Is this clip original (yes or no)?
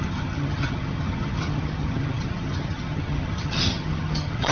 no